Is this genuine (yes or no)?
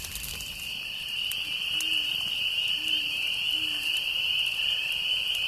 yes